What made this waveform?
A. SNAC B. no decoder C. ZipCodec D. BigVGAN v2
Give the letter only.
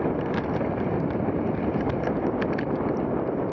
B